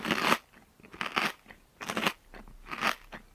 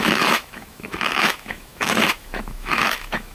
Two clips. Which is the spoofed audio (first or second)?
second